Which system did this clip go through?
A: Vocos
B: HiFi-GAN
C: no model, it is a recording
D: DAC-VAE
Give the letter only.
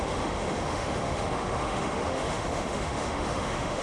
D